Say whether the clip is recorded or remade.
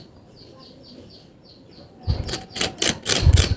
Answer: recorded